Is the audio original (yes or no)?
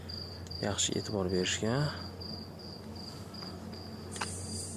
yes